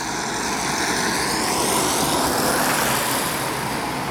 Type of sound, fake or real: real